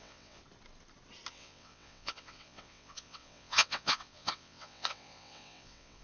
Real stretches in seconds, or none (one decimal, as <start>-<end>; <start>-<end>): 0.4-1.3